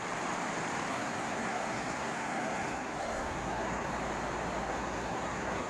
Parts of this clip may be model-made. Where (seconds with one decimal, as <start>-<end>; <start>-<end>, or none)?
0.9-3.9; 4.7-5.7